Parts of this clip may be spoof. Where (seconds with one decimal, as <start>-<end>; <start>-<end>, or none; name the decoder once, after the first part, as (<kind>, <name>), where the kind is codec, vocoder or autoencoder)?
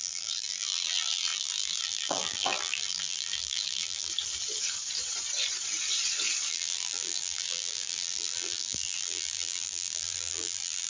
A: 0.0-4.1 (vocoder, BigVGAN v2); 6.5-10.9